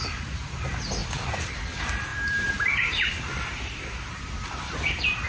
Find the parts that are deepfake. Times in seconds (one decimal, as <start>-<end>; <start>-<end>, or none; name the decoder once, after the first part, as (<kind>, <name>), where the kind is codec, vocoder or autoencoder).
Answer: 1.0-1.6 (vocoder, BigVGAN v2); 2.1-5.3